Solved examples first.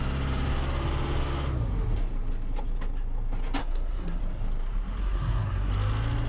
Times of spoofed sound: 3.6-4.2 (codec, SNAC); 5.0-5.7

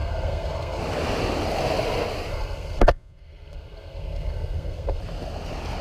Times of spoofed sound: 0.0-0.8 (codec, SNAC); 2.3-5.0

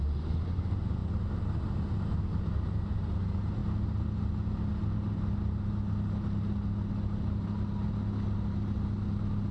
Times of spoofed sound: none

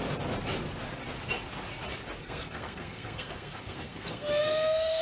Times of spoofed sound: 2.2-5.0 (codec, SNAC)

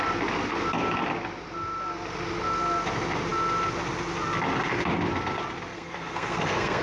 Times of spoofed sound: 5.7-6.8 (codec, SNAC)

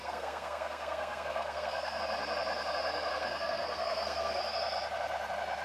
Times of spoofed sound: 0.0-2.0 (codec, SNAC); 3.1-4.4